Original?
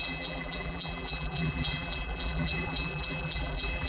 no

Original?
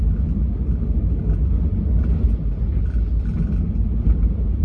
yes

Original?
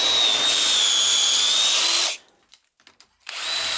yes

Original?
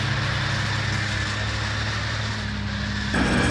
yes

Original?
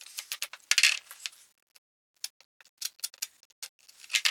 yes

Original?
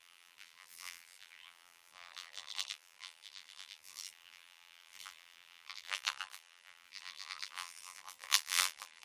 no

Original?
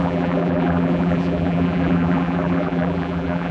no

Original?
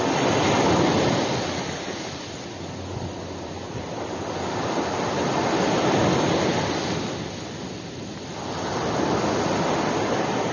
yes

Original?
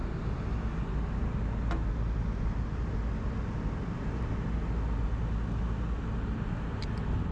yes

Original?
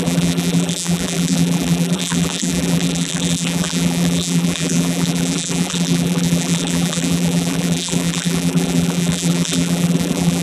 no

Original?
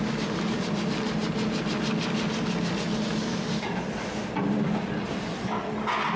yes